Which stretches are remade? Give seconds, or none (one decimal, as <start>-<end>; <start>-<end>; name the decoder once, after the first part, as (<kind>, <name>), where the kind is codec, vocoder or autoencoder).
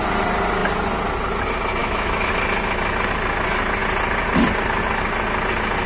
1.8-2.3 (autoencoder, DAC-VAE)